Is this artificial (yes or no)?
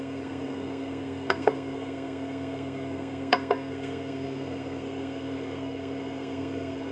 yes